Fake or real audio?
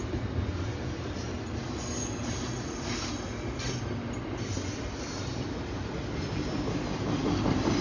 real